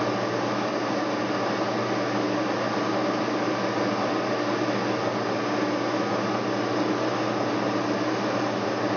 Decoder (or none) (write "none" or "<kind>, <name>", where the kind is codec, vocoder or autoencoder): none